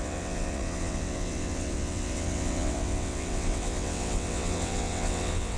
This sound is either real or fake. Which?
fake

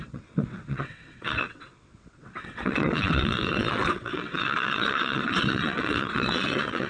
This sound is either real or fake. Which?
fake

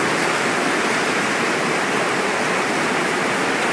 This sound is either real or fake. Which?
real